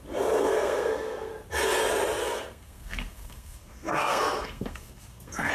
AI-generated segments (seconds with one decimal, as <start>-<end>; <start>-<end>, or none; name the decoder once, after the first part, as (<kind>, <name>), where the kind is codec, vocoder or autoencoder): 0.4-1.3 (codec, SNAC); 2.2-5.5